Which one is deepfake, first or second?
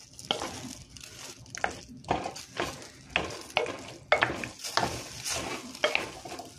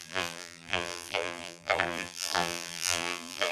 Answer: second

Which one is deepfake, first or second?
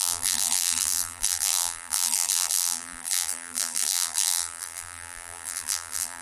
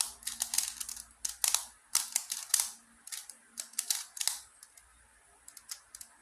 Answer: first